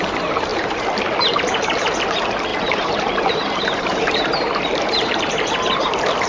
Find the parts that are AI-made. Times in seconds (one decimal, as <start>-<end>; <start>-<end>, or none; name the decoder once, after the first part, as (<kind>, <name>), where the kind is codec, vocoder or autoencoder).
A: 0.5-1.0 (vocoder, BigVGAN v2); 2.5-5.2

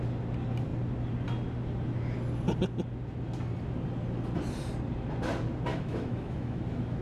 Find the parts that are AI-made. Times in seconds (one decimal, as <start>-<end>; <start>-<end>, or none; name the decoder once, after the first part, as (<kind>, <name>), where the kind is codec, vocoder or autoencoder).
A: 5.7-7.0 (autoencoder, DAC-VAE)

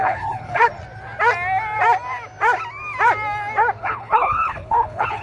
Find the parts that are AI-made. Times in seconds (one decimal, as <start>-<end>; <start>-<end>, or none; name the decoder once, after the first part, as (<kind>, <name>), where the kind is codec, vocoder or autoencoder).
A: 0.0-0.7 (codec, HILCodec); 3.8-5.2

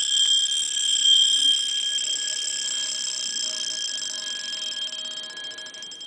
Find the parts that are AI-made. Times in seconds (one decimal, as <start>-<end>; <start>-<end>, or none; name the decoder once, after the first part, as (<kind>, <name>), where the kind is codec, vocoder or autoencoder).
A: none

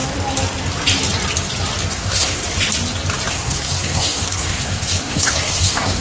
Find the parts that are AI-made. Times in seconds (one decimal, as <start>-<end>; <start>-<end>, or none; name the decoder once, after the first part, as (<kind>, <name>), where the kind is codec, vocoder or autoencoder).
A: 1.9-2.4 (codec, SNAC); 3.3-6.0